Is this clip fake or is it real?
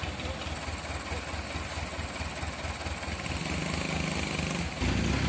real